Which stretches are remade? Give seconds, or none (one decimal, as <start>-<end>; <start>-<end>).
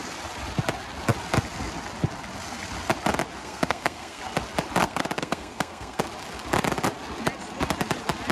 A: 3.4-4.2; 4.8-6.0